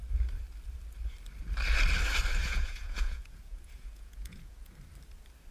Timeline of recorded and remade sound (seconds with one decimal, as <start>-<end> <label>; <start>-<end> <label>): 0.0-2.4 recorded; 2.4-4.7 remade; 4.7-5.5 recorded